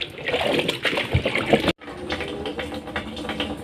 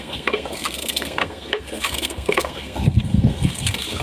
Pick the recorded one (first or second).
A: first